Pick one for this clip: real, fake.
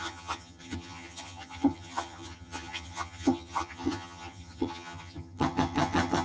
fake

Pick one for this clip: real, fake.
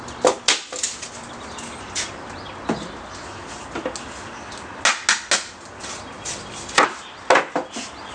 real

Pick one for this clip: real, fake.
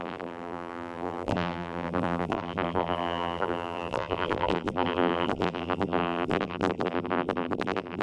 fake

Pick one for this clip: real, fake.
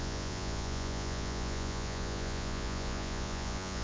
fake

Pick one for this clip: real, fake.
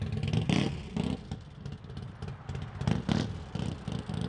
real